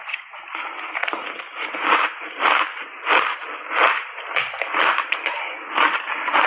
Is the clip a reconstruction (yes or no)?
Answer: no